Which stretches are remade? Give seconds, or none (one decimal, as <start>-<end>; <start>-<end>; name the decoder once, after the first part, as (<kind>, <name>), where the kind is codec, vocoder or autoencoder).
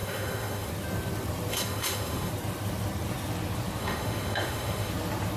0.0-0.7 (autoencoder, DAC-VAE); 1.5-2.3; 3.8-4.9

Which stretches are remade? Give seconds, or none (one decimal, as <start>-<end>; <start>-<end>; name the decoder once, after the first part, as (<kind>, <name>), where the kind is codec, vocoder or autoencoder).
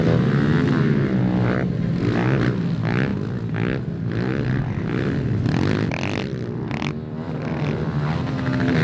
none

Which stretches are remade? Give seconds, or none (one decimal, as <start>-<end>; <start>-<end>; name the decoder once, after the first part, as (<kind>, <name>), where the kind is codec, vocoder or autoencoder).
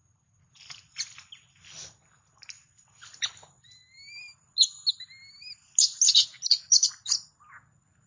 none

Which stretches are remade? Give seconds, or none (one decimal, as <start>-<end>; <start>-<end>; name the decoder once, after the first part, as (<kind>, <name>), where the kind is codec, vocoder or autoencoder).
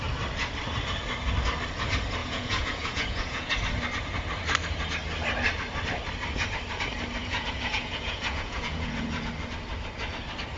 2.2-3.5 (vocoder, Vocos); 7.2-9.3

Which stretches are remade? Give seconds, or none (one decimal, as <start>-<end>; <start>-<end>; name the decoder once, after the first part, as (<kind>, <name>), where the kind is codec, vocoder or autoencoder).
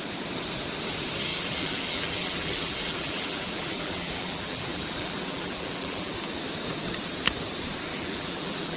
1.3-6.1 (vocoder, BigVGAN v2); 7.9-8.8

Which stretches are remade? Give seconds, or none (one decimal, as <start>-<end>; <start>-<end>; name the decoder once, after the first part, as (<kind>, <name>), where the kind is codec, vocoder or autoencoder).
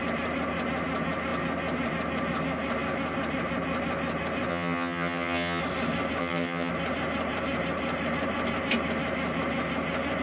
4.5-5.6 (vocoder, HiFi-GAN); 6.2-6.7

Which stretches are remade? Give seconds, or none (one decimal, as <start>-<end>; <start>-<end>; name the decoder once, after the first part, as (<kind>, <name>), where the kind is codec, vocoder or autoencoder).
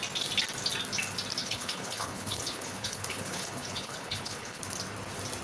1.4-4.6 (codec, HILCodec)